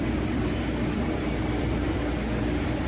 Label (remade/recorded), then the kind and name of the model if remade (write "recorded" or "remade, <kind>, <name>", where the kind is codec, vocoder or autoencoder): remade, vocoder, BigVGAN v2